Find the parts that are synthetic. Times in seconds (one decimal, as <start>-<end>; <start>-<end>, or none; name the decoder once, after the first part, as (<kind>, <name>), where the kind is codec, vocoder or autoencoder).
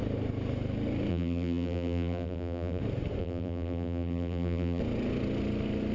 1.1-2.8 (vocoder, BigVGAN v2); 3.2-4.8